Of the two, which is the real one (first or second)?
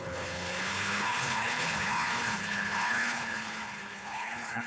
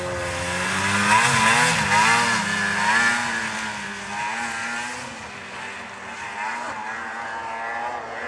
second